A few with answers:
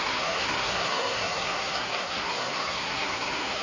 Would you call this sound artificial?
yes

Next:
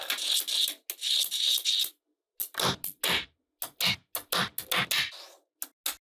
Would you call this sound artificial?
no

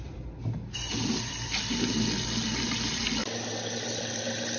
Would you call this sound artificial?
no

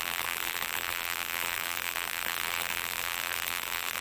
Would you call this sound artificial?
yes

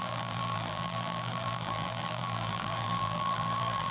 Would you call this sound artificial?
yes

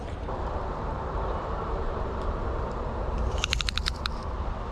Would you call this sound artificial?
yes